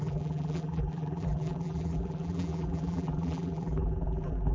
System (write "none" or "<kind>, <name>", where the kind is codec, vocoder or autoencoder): vocoder, BigVGAN v2